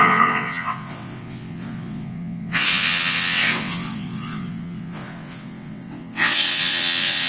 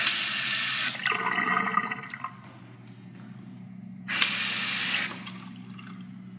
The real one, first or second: second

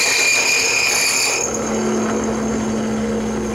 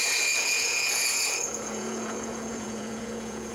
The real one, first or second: first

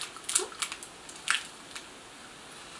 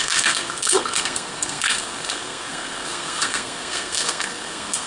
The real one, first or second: first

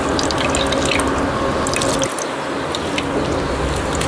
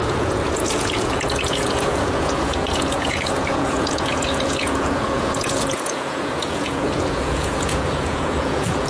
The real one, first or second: first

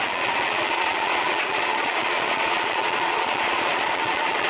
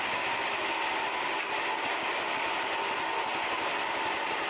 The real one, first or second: second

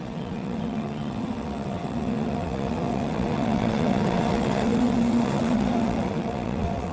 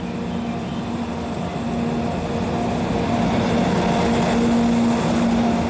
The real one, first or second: second